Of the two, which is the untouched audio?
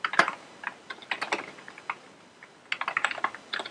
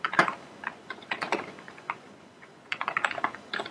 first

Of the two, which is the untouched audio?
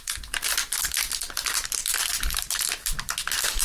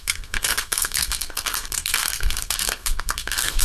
first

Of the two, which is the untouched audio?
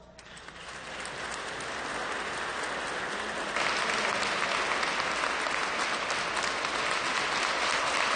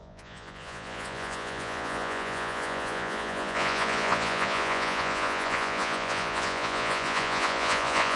first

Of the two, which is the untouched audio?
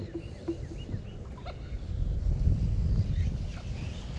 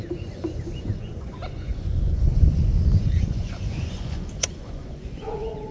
first